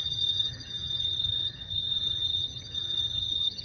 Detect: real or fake fake